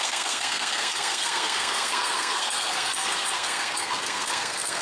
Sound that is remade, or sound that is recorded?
remade